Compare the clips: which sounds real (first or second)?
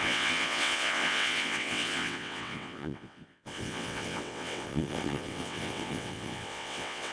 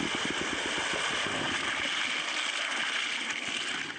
second